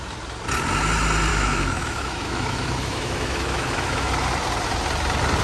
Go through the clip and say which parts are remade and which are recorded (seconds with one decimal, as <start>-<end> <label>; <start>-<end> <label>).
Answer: 0.0-1.3 recorded; 1.3-4.1 remade; 4.1-5.4 recorded